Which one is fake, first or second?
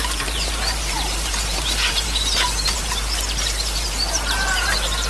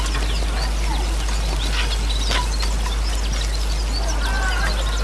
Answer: first